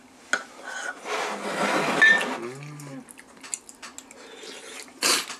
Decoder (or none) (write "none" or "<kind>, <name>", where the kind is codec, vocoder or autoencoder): none